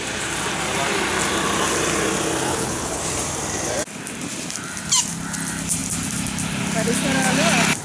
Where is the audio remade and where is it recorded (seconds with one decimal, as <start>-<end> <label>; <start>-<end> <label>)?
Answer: 0.0-2.5 recorded; 2.5-3.0 remade; 3.0-7.8 recorded